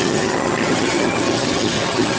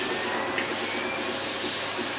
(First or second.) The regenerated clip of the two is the first